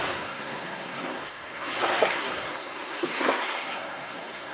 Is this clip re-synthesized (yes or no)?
yes